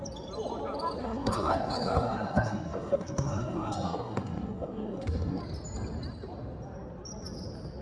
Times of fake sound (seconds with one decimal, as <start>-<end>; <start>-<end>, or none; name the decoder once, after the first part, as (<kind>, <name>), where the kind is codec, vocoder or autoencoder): 1.0-5.4 (codec, SNAC)